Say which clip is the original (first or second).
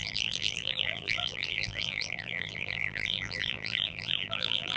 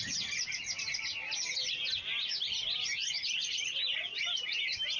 second